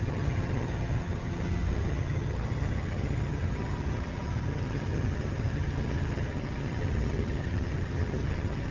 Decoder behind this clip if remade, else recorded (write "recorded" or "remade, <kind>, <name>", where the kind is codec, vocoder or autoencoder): remade, vocoder, HiFi-GAN